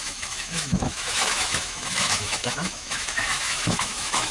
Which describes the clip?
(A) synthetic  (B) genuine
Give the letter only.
A